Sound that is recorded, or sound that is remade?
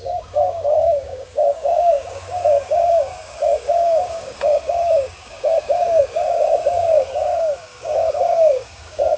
remade